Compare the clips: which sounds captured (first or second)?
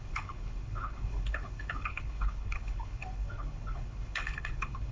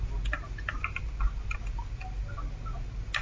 second